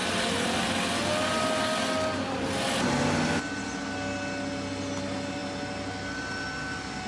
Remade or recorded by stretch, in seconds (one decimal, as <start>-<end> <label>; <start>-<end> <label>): 0.0-7.1 recorded